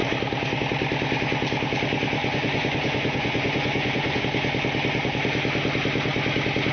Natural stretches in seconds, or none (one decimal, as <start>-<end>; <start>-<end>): 0.0-2.2; 4.2-6.7